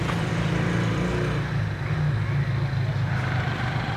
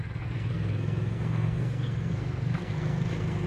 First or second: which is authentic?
first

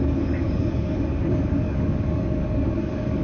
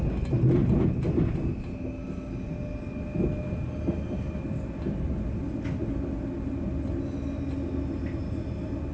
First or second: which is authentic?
second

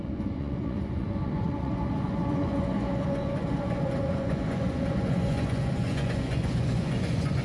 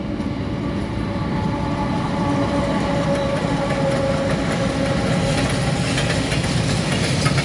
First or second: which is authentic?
second